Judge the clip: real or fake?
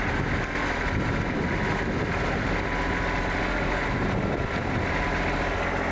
real